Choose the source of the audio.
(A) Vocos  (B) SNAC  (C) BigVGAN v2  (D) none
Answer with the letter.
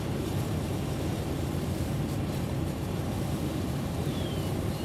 C